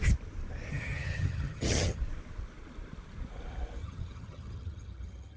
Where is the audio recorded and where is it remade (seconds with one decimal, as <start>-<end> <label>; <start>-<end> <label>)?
0.0-0.7 recorded; 0.7-2.0 remade; 2.0-3.8 recorded; 3.8-5.4 remade